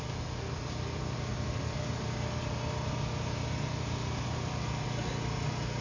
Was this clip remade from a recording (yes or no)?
no